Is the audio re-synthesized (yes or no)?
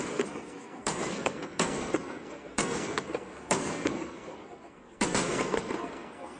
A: yes